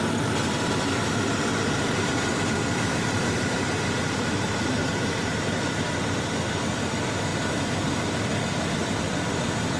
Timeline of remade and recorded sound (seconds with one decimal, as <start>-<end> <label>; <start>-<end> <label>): 0.0-1.5 recorded; 1.5-5.7 remade; 5.7-7.3 recorded; 7.3-9.0 remade; 9.0-9.8 recorded